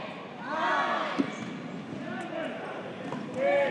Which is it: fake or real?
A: real